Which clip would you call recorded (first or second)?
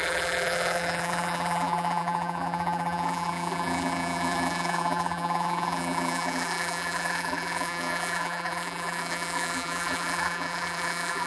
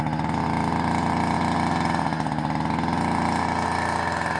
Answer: second